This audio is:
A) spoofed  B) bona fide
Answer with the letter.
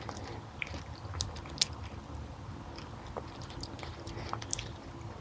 B